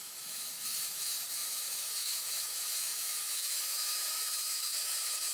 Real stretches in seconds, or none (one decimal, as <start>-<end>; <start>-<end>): none